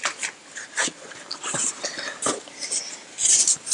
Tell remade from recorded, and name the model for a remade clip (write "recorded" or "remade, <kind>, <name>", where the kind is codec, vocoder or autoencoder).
recorded